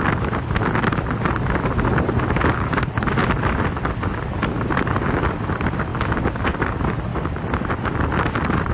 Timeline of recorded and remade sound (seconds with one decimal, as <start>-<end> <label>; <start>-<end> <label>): 0.0-3.2 remade; 3.2-4.3 recorded; 4.3-5.9 remade; 5.9-6.5 recorded; 6.5-7.1 remade; 7.1-8.7 recorded